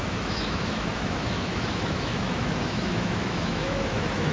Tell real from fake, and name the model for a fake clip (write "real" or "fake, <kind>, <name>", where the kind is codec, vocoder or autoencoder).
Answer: fake, autoencoder, DAC-VAE